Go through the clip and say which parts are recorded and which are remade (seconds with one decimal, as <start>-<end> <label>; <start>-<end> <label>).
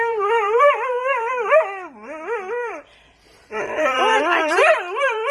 0.0-1.3 remade; 1.3-2.5 recorded; 2.5-5.3 remade